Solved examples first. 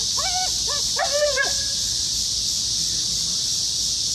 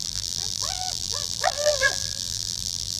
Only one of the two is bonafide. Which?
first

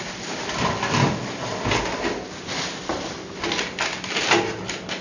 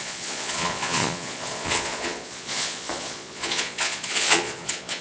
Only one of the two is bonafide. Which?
first